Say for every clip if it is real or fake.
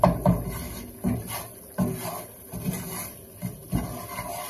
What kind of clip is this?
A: real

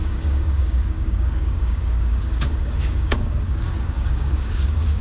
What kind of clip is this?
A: fake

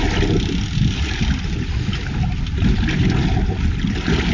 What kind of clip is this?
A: real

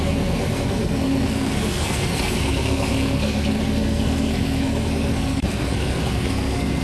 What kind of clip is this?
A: fake